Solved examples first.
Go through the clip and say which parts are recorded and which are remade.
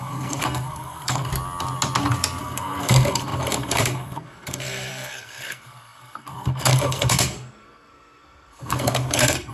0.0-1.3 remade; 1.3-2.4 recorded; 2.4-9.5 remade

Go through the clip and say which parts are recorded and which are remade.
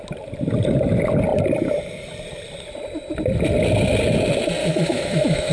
0.0-4.6 recorded; 4.6-5.5 remade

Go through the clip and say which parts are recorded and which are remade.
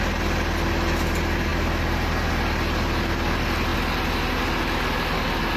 0.0-5.6 recorded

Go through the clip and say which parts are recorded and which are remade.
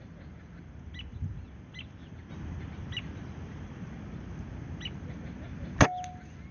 0.0-6.5 recorded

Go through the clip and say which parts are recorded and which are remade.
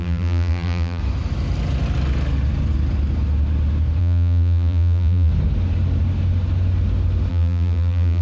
0.0-1.0 remade; 1.0-4.0 recorded; 4.0-5.3 remade; 5.3-7.3 recorded; 7.3-8.2 remade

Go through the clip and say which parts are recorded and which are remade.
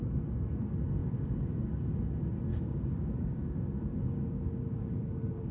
0.0-1.0 recorded; 1.0-1.9 remade; 1.9-2.5 recorded; 2.5-5.5 remade